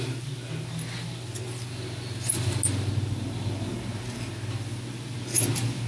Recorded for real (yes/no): yes